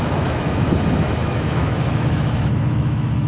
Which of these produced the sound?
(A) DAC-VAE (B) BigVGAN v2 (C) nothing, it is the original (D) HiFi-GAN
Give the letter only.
A